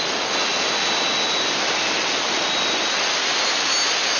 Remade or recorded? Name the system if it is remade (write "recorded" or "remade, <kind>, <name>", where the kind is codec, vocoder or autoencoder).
recorded